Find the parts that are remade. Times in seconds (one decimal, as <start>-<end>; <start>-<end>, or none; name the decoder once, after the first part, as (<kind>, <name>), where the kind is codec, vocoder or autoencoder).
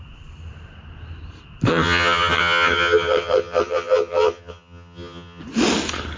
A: 1.7-5.4 (vocoder, HiFi-GAN)